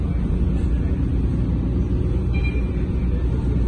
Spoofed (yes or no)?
no